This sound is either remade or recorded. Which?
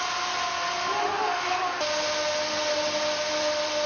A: recorded